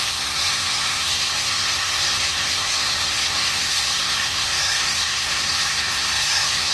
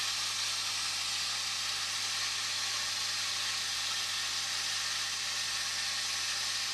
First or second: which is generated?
first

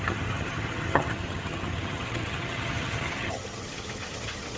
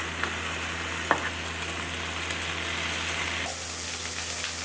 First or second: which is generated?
first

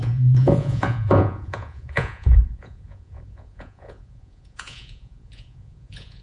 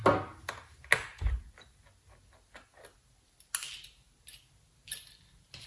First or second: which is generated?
first